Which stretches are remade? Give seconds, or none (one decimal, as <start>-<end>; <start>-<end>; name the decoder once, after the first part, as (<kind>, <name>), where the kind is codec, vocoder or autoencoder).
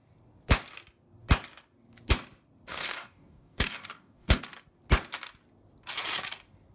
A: 2.7-4.4 (codec, DAC)